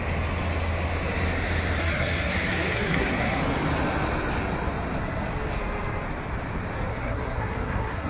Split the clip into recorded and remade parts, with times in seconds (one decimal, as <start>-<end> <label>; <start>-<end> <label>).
0.0-1.8 recorded; 1.8-3.4 remade; 3.4-6.9 recorded; 6.9-8.1 remade

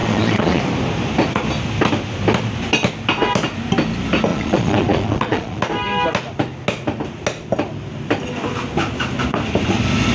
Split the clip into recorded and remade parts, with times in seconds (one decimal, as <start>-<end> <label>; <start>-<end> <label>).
0.0-0.6 remade; 0.6-4.3 recorded; 4.3-5.6 remade; 5.6-10.1 recorded